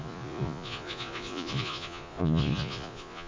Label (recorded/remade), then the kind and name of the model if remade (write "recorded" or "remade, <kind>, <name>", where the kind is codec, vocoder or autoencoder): remade, vocoder, Vocos